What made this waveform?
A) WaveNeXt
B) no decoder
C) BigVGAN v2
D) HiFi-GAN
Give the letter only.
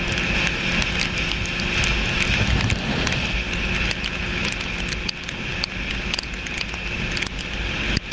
B